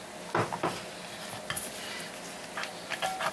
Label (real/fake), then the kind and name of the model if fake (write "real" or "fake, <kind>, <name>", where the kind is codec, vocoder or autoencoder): real